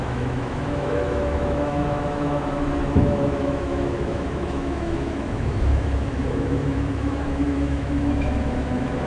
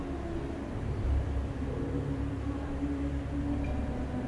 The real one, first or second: second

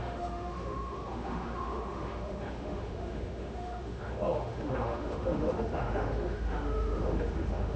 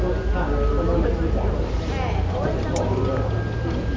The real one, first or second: second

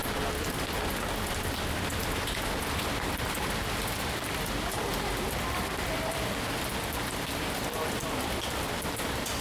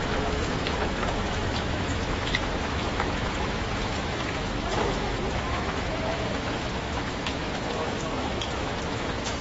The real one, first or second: first